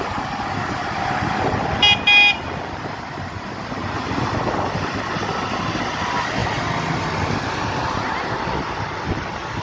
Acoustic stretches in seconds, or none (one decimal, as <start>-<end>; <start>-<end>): 0.0-9.6